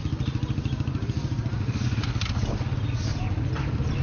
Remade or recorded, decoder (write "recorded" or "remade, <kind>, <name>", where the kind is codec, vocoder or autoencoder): recorded